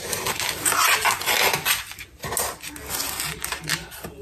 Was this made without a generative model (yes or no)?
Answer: yes